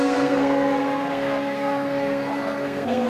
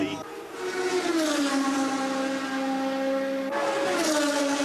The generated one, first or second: first